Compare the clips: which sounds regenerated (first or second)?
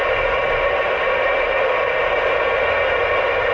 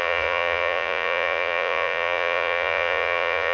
second